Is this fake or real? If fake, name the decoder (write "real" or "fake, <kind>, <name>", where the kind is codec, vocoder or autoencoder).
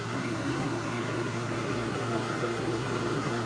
fake, codec, SNAC